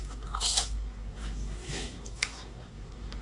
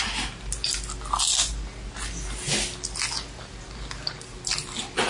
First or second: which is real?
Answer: second